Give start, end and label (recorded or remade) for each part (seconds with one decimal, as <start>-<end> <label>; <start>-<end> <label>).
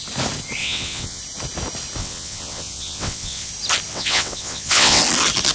0.0-0.6 recorded; 0.6-1.2 remade; 1.2-2.0 recorded; 2.0-3.5 remade; 3.5-3.9 recorded; 3.9-5.0 remade; 5.0-5.5 recorded